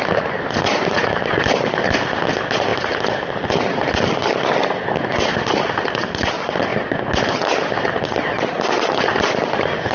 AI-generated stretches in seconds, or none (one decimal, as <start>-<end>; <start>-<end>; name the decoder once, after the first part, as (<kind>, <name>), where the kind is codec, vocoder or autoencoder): 2.7-4.3 (vocoder, BigVGAN v2)